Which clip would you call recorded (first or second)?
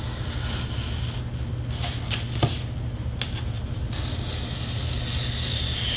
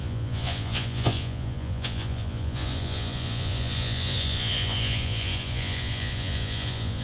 first